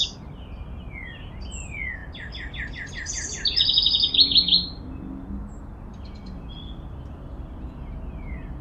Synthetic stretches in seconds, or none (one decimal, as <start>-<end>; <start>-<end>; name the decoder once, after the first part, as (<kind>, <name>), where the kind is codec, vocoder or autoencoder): none